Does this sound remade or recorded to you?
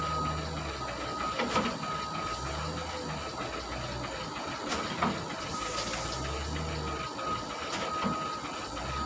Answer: recorded